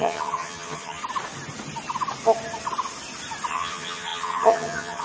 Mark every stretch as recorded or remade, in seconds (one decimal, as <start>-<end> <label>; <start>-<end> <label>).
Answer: 0.0-1.0 remade; 1.0-3.5 recorded; 3.5-5.0 remade

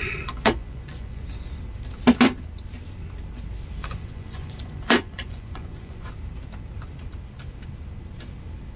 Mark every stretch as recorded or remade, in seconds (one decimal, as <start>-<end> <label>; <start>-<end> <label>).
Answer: 0.0-1.2 remade; 1.2-3.8 recorded; 3.8-6.1 remade; 6.1-8.8 recorded

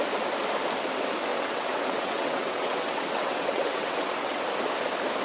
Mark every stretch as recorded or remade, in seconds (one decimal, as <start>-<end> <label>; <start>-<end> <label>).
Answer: 0.0-1.3 recorded; 1.3-4.4 remade; 4.4-5.2 recorded

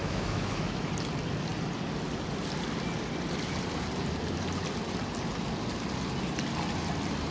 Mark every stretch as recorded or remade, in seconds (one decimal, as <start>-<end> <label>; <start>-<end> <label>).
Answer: 0.0-0.9 remade; 0.9-7.3 recorded

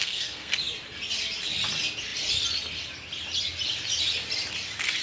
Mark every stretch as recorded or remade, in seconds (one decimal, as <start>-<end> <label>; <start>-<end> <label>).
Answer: 0.0-0.5 remade; 0.5-5.0 recorded